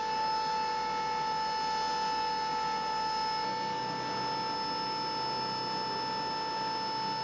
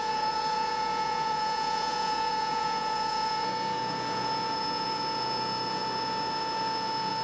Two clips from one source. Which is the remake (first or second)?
second